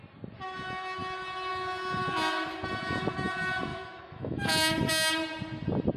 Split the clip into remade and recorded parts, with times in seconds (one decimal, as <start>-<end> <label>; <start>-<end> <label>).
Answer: 0.0-3.7 recorded; 3.7-4.9 remade; 4.9-6.0 recorded